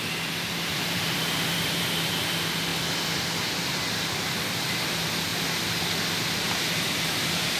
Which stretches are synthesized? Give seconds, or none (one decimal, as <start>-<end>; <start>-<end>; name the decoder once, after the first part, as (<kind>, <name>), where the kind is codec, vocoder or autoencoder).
0.0-2.7 (vocoder, BigVGAN v2); 3.4-5.3; 5.9-7.6